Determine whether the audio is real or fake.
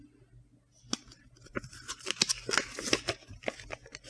real